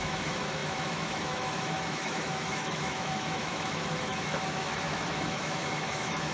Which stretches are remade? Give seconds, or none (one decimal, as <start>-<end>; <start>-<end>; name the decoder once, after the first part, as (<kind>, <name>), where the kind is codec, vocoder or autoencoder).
0.0-6.3 (autoencoder, DAC-VAE)